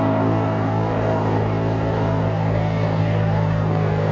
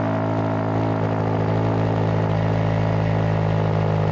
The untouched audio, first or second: second